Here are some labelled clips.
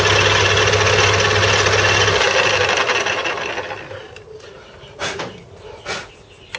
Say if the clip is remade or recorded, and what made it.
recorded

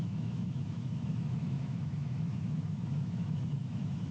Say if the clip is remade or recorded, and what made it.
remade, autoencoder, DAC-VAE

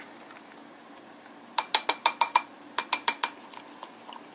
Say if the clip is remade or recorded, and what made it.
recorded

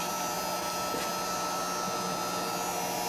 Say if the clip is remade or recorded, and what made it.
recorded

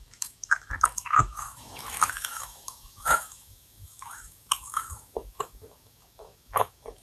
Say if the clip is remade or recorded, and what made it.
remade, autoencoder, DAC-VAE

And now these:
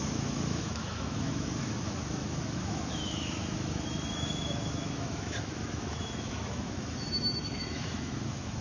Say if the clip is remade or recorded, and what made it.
remade, autoencoder, DAC-VAE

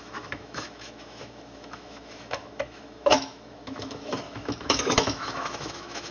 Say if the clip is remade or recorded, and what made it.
remade, autoencoder, DAC-VAE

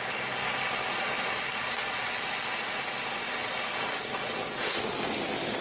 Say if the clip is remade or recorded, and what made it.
recorded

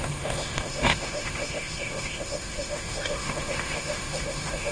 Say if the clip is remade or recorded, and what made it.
remade, autoencoder, DAC-VAE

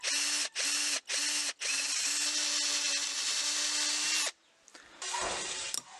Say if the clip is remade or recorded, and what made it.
recorded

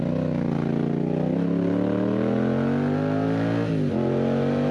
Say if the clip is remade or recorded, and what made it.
recorded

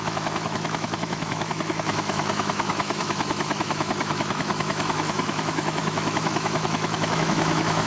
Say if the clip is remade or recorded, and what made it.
remade, autoencoder, DAC-VAE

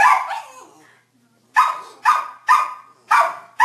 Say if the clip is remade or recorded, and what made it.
recorded